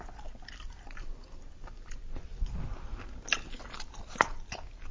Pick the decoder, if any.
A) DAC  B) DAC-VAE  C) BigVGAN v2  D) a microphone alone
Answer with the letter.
D